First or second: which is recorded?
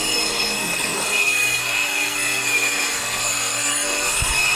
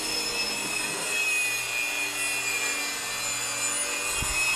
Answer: second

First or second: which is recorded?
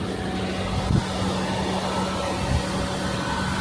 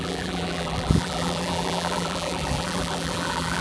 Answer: first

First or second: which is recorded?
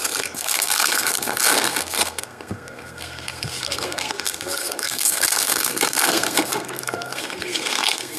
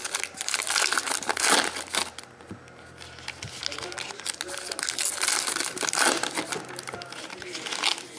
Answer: second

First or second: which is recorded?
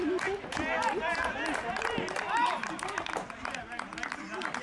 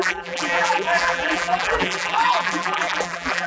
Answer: first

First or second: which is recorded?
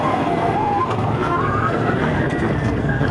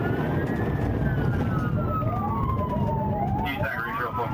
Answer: second